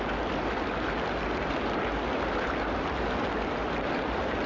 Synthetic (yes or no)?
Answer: no